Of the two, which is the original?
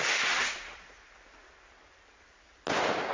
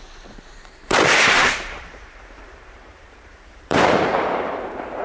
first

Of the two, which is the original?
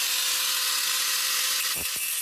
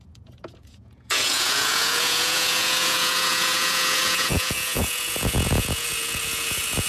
first